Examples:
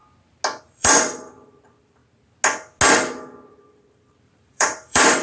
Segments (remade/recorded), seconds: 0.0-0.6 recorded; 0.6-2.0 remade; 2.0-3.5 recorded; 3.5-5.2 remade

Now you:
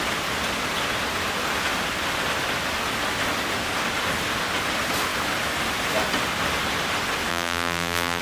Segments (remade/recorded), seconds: 0.0-7.3 recorded; 7.3-8.2 remade

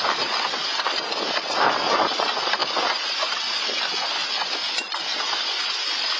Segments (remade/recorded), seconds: 0.0-2.6 remade; 2.6-3.1 recorded; 3.1-6.2 remade

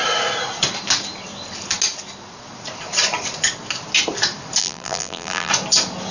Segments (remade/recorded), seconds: 0.0-4.6 recorded; 4.6-5.5 remade; 5.5-6.1 recorded